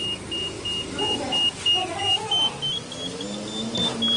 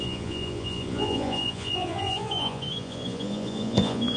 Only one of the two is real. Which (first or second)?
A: first